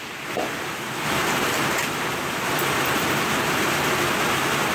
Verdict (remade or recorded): recorded